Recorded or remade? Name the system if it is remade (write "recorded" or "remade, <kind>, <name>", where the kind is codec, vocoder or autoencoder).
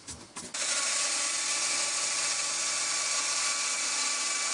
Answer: recorded